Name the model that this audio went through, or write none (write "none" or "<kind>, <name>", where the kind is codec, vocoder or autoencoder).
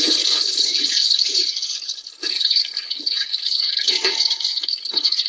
codec, HILCodec